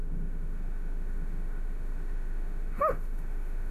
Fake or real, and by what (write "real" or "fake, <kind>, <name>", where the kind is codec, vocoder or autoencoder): fake, autoencoder, DAC-VAE